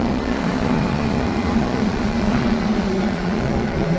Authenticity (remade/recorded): remade